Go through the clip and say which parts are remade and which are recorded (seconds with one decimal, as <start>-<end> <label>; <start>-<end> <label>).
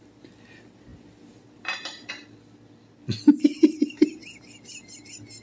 0.0-3.5 recorded; 3.5-4.9 remade; 4.9-5.4 recorded